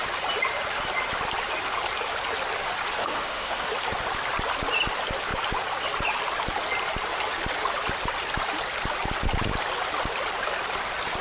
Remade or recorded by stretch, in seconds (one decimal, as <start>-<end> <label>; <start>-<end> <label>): 0.0-3.0 recorded; 3.0-3.7 remade; 3.7-11.2 recorded